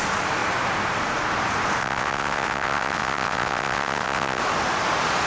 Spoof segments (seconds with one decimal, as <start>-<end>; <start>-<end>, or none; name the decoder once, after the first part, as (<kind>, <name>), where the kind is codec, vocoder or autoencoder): 1.8-4.4 (vocoder, WaveNeXt)